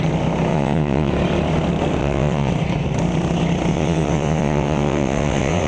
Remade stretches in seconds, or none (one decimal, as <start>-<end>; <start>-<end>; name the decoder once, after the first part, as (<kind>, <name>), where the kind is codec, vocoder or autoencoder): 0.5-1.1 (vocoder, WaveNeXt); 2.0-2.5; 3.7-5.7